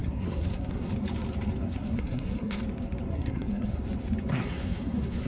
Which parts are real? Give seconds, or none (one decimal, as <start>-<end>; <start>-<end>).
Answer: 0.9-1.6; 2.6-3.1; 3.8-4.3

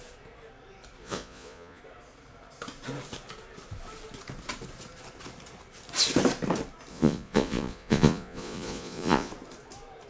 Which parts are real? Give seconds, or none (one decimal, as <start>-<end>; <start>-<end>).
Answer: 0.0-1.0; 1.8-6.9; 9.3-10.1

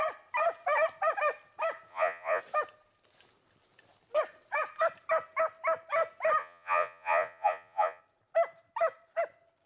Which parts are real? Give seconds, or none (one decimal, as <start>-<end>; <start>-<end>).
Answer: 0.0-1.9; 2.4-6.4; 8.0-9.7

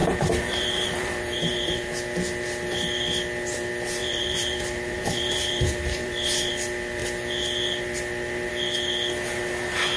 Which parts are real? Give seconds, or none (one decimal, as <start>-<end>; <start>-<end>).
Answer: 1.9-4.0; 6.5-10.0

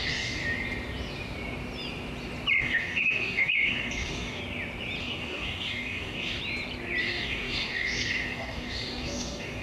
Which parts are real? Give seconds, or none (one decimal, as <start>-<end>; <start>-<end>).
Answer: 0.4-2.6; 4.4-5.0; 6.4-7.0